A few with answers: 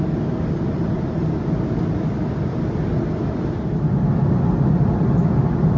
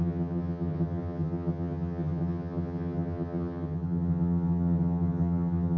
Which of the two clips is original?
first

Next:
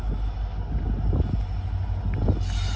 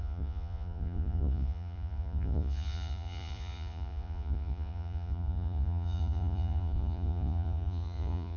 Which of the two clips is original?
first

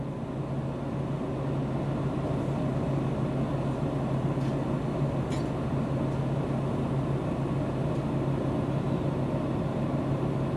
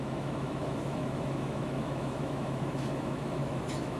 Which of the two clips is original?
first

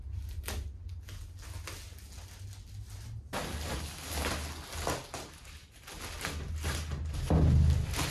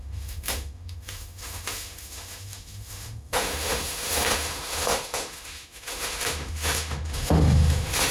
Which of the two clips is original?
first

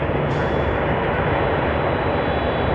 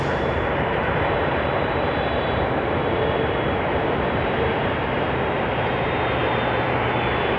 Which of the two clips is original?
first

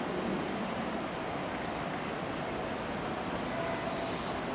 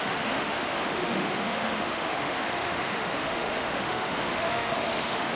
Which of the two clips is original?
first